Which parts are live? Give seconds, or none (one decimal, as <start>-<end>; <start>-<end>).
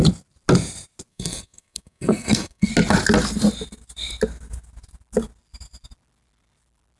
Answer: 0.0-1.1; 2.7-7.0